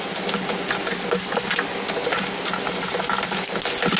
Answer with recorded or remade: recorded